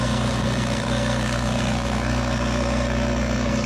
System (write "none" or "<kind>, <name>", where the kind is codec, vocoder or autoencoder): codec, SNAC